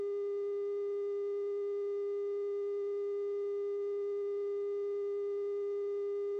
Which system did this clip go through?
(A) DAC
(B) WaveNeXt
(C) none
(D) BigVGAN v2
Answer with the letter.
C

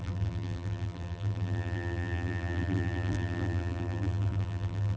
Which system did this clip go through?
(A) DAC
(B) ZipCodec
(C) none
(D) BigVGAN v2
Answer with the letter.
D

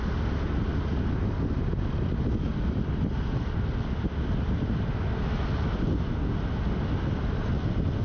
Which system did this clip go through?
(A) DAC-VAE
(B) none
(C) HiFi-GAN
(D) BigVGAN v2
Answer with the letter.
B